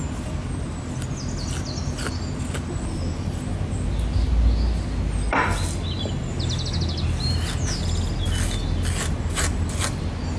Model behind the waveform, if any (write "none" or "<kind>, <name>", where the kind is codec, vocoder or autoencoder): none